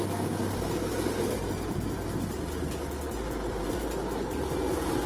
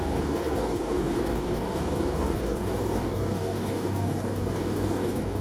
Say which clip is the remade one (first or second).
second